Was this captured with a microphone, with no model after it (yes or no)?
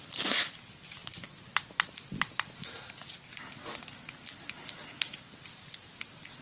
yes